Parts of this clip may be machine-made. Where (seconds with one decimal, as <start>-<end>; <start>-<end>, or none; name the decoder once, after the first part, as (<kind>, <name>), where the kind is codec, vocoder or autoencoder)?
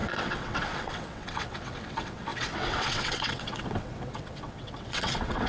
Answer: 0.0-5.5 (vocoder, WaveNeXt)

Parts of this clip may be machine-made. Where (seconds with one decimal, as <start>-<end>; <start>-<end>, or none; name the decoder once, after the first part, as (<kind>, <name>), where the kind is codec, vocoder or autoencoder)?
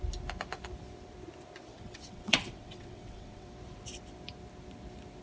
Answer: 1.7-3.5 (vocoder, WaveNeXt)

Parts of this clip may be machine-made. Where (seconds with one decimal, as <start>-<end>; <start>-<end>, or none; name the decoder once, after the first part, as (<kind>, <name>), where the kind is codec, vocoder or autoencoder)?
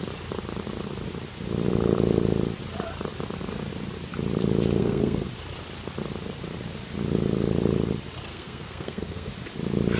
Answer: 4.8-5.3 (codec, SNAC); 8.3-9.3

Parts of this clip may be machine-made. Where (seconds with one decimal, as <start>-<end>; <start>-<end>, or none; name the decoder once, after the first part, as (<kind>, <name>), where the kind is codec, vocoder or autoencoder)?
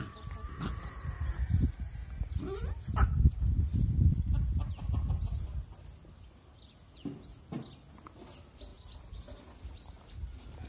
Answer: none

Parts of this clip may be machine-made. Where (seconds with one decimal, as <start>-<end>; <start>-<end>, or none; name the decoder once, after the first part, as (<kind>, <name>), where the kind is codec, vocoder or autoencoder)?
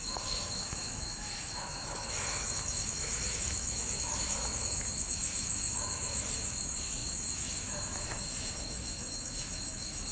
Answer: 0.0-10.1 (autoencoder, DAC-VAE)